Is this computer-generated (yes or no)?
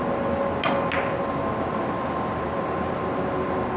no